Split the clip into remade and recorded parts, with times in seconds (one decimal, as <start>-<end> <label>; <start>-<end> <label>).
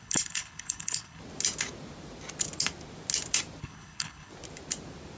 0.0-1.2 remade; 1.2-3.6 recorded; 3.6-4.3 remade; 4.3-5.2 recorded